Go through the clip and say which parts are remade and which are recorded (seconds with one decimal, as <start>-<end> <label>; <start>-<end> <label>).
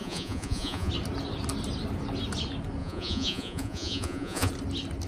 0.0-0.9 remade; 0.9-2.8 recorded; 2.8-4.5 remade; 4.5-5.1 recorded